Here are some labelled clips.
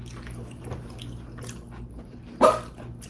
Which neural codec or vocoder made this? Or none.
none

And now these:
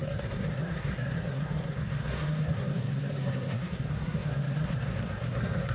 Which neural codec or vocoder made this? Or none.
codec, SNAC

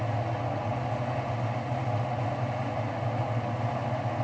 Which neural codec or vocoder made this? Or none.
none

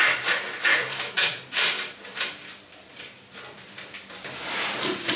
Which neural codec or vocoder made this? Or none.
vocoder, BigVGAN v2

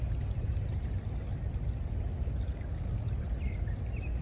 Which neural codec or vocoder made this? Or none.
none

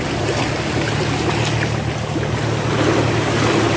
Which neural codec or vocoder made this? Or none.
none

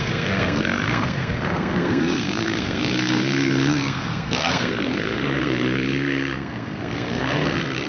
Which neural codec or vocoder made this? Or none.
codec, SNAC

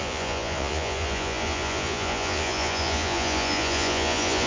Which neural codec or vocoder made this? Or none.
vocoder, Vocos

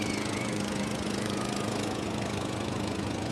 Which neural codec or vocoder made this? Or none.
vocoder, Vocos